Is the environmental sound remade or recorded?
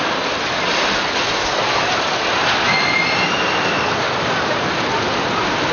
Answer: recorded